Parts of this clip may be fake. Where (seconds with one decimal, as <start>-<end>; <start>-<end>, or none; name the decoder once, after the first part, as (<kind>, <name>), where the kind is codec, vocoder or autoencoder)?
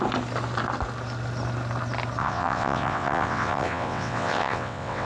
2.2-5.1 (vocoder, WaveNeXt)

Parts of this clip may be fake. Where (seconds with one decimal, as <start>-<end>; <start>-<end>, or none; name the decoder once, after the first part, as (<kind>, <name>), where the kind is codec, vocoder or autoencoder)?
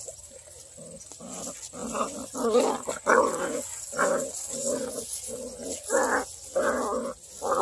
none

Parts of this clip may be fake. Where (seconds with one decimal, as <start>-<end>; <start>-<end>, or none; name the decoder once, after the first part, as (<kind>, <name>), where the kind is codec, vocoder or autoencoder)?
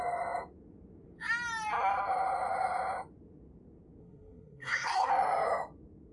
4.0-5.1 (codec, SNAC)